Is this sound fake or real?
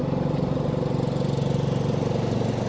real